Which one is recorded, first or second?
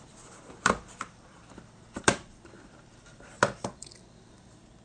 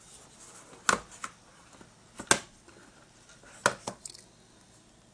second